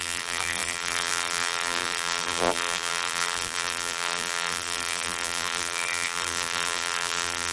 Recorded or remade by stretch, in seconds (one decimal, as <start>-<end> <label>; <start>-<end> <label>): 0.0-7.5 remade

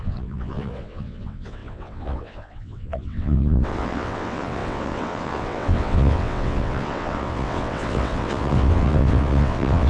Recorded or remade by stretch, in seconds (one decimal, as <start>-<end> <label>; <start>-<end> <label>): 0.0-9.9 remade

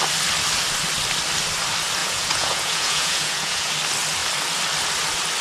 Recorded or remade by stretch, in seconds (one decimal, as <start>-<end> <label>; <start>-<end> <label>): 0.0-2.0 recorded; 2.0-3.7 remade; 3.7-5.4 recorded

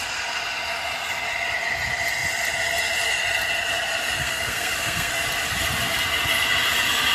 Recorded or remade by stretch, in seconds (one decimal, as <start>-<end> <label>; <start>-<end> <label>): 0.0-4.2 recorded; 4.2-5.1 remade; 5.1-7.1 recorded

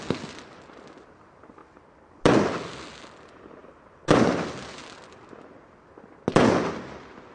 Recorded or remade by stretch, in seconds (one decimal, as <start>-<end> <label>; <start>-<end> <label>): 0.0-7.3 recorded